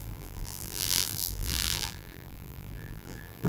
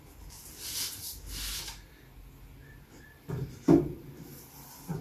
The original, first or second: second